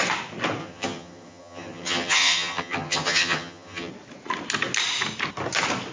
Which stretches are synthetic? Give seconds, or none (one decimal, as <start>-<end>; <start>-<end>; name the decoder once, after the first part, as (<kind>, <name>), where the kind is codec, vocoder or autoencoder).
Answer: 0.6-3.9 (vocoder, HiFi-GAN)